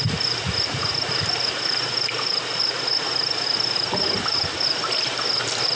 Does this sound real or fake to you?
real